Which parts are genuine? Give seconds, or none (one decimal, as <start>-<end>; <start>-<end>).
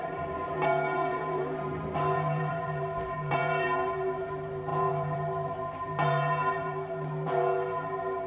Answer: none